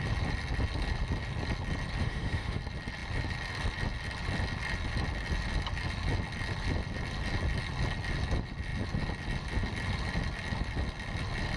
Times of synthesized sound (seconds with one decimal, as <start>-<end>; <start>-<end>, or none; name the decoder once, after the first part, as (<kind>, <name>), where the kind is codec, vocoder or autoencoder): 2.0-2.6 (autoencoder, DAC-VAE)